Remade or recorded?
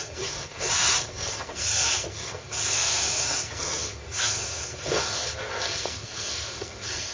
remade